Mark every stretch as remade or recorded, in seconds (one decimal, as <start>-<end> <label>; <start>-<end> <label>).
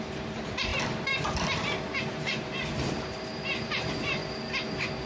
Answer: 0.0-4.2 remade; 4.2-5.1 recorded